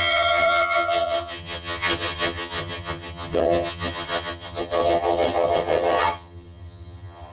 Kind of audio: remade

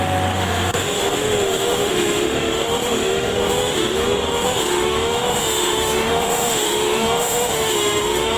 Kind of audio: remade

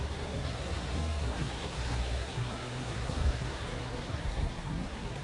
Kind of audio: remade